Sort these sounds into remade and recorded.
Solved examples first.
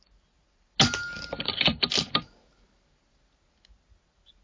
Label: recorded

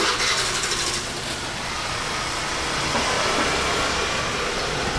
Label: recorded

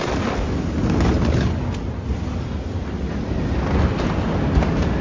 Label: recorded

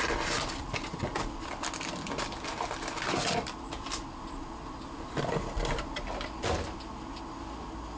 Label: recorded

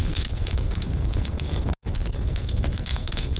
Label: remade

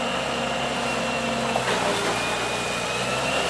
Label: recorded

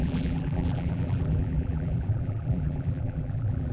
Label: remade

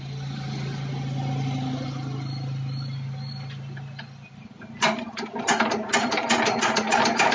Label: recorded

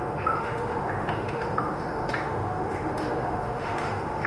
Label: remade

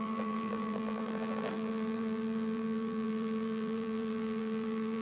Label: remade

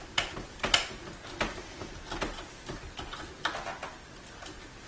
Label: recorded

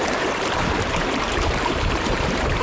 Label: remade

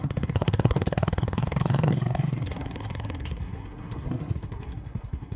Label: remade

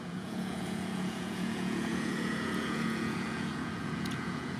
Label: remade